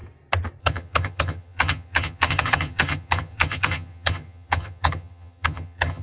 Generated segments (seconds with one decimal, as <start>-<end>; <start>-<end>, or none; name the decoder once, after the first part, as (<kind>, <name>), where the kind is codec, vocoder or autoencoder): 0.6-6.0 (vocoder, HiFi-GAN)